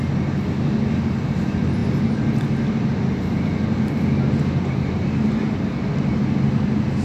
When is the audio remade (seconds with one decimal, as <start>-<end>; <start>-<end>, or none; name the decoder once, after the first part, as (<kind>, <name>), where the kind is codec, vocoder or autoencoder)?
none